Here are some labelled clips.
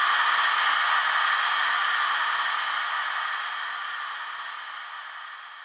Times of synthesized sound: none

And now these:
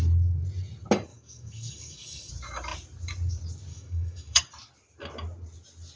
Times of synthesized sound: 1.1-2.3 (codec, DAC); 3.7-4.4

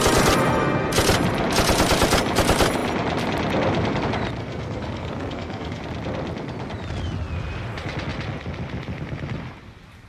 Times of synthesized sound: 4.4-5.8 (codec, SNAC)

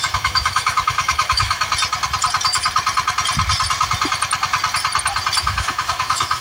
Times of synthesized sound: 0.0-1.7 (autoencoder, DAC-VAE); 5.4-6.4

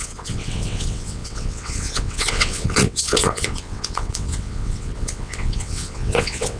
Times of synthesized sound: 0.0-6.6 (vocoder, WaveNeXt)

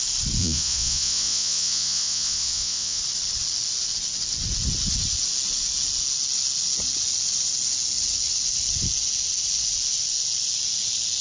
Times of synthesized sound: 0.4-3.0 (vocoder, Vocos)

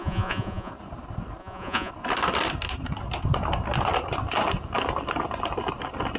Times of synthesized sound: 0.0-0.7 (vocoder, Vocos); 1.4-1.9